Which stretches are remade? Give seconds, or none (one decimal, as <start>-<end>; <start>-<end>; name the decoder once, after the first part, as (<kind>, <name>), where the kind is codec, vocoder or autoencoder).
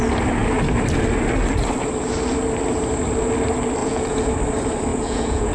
3.8-4.3 (vocoder, Vocos); 4.9-5.5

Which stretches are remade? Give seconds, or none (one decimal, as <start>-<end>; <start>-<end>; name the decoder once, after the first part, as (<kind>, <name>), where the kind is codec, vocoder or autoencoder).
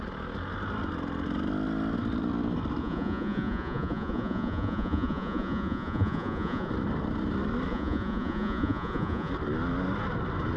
2.8-6.7 (vocoder, Vocos); 7.7-9.3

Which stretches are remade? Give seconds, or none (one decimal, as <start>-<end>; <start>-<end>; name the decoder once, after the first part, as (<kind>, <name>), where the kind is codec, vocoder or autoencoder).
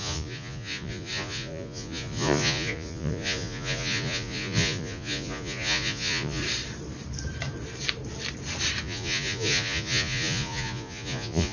0.0-6.4 (vocoder, Vocos); 8.8-11.5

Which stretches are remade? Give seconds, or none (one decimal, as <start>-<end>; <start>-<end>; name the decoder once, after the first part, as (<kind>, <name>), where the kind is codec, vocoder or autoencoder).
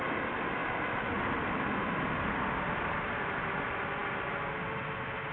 none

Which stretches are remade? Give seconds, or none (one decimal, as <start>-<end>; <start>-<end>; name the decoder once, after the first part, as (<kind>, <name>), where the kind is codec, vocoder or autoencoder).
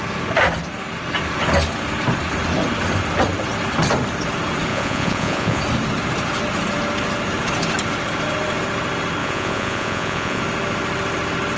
4.7-5.6 (vocoder, Vocos); 9.2-10.4